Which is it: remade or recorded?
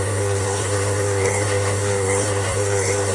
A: remade